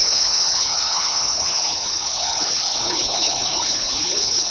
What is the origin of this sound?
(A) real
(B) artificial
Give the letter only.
B